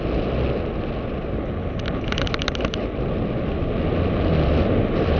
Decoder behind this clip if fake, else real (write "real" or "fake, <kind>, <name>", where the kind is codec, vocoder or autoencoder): real